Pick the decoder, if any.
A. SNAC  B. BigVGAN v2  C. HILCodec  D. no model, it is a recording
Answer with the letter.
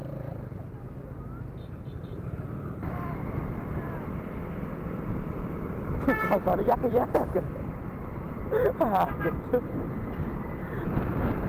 B